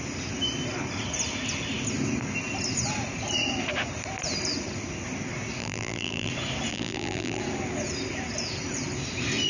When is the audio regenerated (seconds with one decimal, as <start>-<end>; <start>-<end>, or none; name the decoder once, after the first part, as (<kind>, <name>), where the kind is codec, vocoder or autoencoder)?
5.6-6.3 (vocoder, BigVGAN v2); 6.7-7.4